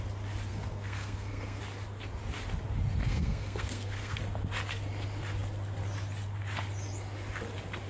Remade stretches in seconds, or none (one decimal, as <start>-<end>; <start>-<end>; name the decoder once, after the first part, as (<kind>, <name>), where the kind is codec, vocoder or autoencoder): 0.5-1.6 (codec, SNAC); 3.0-4.2